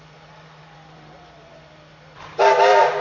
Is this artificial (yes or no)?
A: yes